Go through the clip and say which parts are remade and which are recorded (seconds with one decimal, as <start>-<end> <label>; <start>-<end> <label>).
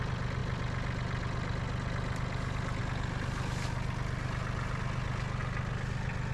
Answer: 0.0-6.3 recorded